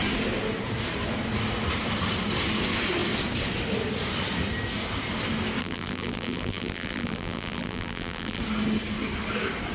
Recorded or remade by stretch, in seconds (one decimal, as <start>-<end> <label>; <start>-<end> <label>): 0.0-5.6 recorded; 5.6-8.4 remade; 8.4-9.7 recorded